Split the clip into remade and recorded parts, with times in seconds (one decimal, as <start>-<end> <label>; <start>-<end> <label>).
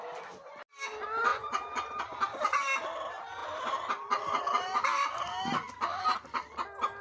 0.0-1.3 recorded; 1.3-2.0 remade; 2.0-7.0 recorded